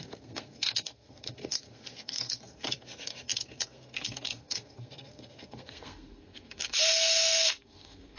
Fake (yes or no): yes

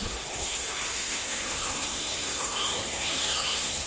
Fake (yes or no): yes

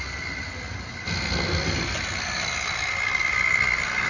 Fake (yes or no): no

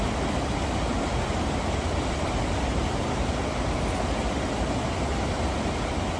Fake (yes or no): no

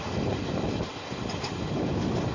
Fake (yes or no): no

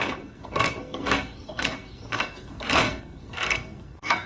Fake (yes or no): yes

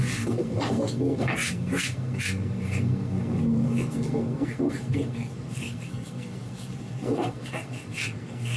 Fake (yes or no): yes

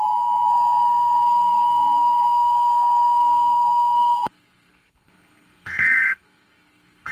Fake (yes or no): yes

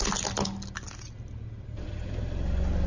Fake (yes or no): no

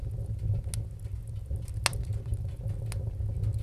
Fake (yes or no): no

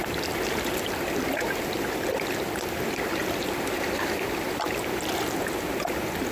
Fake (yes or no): no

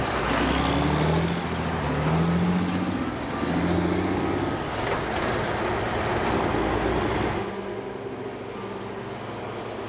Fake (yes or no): no